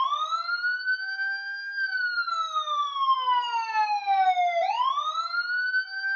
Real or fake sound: real